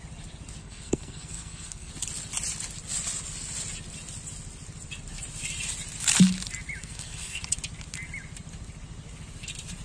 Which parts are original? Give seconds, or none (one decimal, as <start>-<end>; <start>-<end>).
0.0-0.6; 1.9-6.8; 7.4-9.8